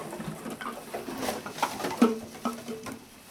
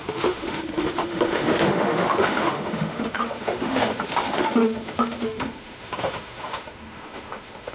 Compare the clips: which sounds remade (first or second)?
second